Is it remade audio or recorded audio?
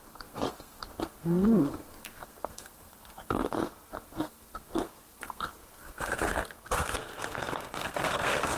remade